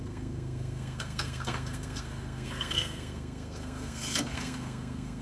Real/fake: fake